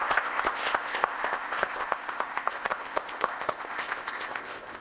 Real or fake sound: fake